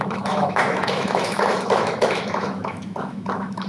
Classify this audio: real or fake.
fake